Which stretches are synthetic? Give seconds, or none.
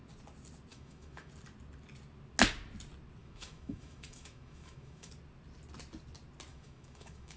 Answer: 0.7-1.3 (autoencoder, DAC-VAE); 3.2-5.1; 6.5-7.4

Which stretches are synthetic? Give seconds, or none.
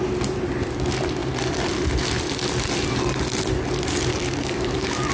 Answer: 4.1-5.1 (codec, DAC)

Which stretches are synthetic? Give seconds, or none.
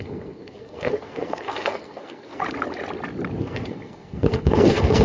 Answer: 0.0-2.4 (codec, SNAC); 3.4-5.0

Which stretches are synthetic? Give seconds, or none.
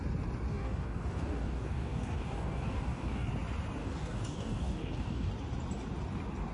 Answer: 0.5-3.3 (codec, DAC); 3.8-5.3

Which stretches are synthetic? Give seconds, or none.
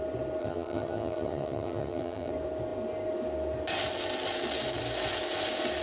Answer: 0.4-2.3 (vocoder, HiFi-GAN)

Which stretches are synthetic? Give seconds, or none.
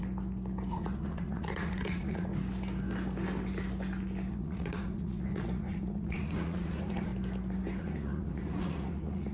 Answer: 0.7-2.3 (vocoder, Vocos); 4.3-7.1; 7.8-9.3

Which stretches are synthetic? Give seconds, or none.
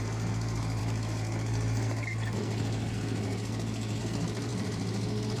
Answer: 0.0-5.4 (codec, SNAC)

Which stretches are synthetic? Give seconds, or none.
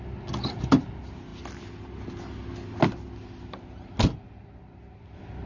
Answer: none